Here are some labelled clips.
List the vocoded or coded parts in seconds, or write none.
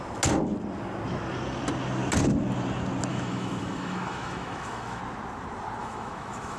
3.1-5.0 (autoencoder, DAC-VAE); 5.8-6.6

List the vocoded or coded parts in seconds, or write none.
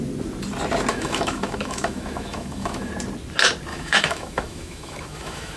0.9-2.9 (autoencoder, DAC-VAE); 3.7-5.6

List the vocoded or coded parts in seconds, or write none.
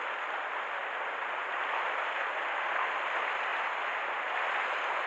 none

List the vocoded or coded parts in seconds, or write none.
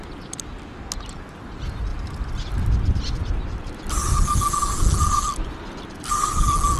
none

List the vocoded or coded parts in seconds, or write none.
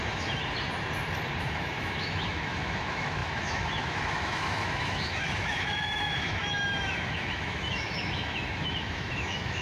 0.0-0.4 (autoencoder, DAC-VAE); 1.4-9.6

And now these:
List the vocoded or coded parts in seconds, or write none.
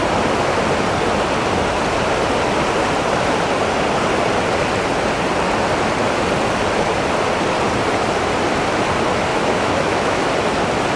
9.3-10.3 (autoencoder, DAC-VAE)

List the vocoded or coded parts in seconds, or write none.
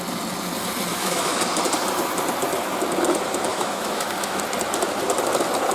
0.9-1.4 (autoencoder, DAC-VAE); 3.5-4.4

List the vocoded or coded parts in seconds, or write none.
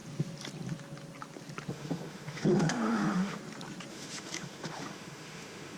1.7-3.4 (autoencoder, DAC-VAE); 3.9-5.8